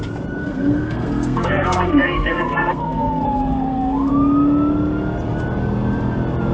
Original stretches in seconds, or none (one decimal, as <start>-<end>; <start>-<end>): 0.0-0.4; 4.1-6.5